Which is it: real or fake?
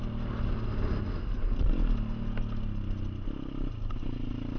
real